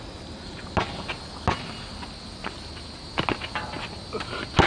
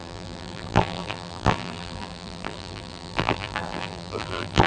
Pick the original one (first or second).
first